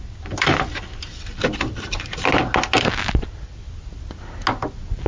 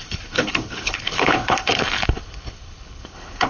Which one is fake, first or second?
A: second